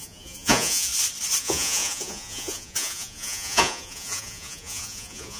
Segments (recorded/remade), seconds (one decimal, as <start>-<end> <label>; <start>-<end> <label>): 0.0-0.9 remade; 0.9-1.4 recorded; 1.4-5.4 remade